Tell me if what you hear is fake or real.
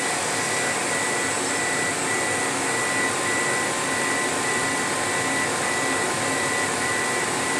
real